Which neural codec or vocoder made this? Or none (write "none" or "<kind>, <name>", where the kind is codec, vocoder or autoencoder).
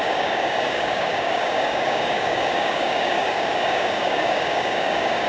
codec, DAC